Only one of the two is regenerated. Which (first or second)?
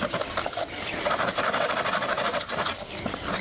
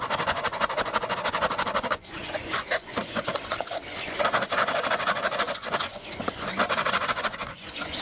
second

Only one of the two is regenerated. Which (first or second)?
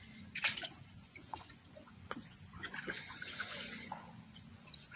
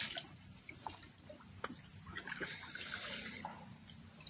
first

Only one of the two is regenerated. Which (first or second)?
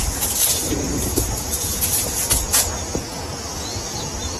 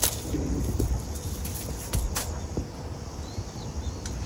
first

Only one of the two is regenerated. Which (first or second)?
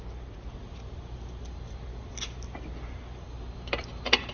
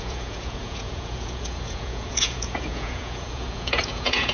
second